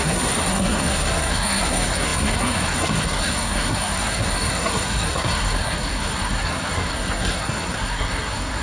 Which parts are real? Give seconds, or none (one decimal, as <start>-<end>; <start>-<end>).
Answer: none